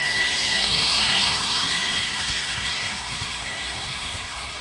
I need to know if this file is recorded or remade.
remade